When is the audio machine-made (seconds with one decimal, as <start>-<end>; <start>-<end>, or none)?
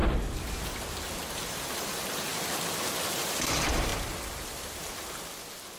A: 1.3-2.3; 3.2-3.9